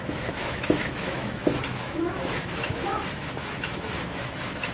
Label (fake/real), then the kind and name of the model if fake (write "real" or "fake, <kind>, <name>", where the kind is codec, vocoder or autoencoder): fake, autoencoder, DAC-VAE